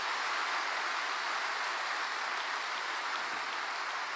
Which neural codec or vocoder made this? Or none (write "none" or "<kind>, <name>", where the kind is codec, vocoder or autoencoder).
none